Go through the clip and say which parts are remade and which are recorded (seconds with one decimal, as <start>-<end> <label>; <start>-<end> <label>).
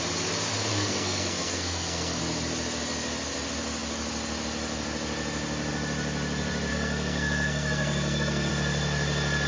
0.0-0.7 recorded; 0.7-2.2 remade; 2.2-6.7 recorded; 6.7-8.5 remade; 8.5-9.5 recorded